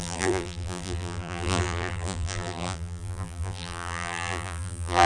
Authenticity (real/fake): fake